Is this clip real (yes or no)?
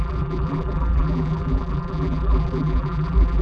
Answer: no